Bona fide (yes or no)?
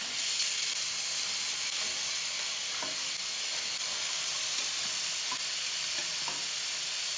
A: yes